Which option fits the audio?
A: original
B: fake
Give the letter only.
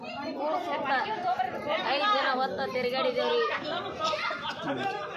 A